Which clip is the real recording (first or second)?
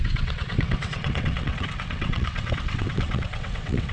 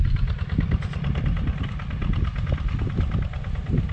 second